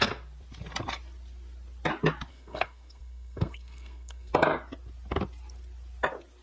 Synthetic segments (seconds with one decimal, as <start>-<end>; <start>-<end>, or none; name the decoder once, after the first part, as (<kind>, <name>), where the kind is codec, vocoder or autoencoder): 2.3-4.3 (codec, SNAC)